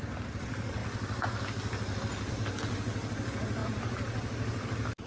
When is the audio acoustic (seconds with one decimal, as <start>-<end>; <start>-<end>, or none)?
0.0-5.1